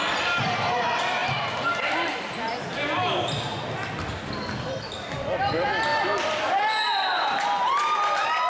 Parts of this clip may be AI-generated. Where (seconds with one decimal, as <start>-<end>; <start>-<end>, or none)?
none